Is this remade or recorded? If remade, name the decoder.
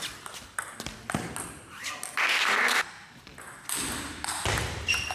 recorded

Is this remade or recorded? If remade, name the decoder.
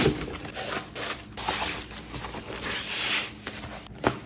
recorded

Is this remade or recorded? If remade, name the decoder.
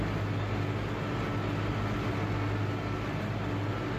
recorded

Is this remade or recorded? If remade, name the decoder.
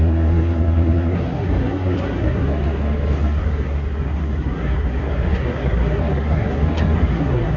remade, codec, SNAC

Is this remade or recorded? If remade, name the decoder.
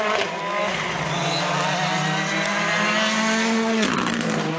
recorded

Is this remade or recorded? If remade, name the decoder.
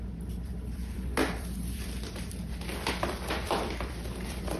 remade, vocoder, BigVGAN v2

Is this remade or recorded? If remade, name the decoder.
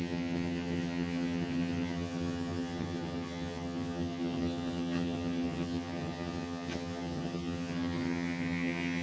remade, vocoder, HiFi-GAN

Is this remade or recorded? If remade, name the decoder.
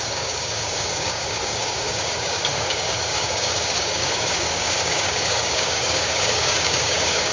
remade, codec, DAC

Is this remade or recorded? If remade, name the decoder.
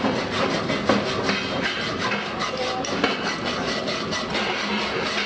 recorded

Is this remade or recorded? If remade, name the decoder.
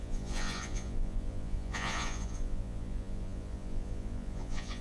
remade, vocoder, Vocos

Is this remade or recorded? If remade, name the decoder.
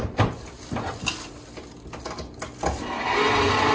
recorded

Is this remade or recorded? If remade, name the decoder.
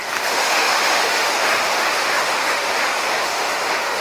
remade, autoencoder, DAC-VAE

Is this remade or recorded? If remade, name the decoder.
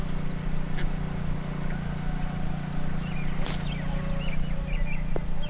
recorded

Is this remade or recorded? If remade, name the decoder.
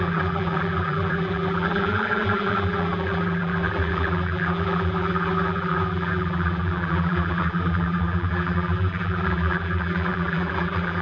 remade, vocoder, BigVGAN v2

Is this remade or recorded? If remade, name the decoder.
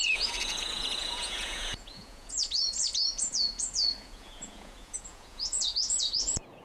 remade, vocoder, Vocos